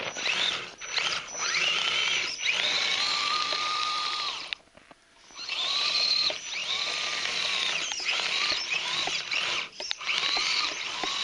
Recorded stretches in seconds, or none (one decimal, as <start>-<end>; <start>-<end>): 0.0-11.2